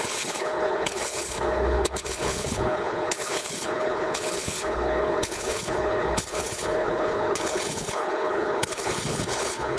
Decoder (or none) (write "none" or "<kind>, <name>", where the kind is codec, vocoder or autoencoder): codec, HILCodec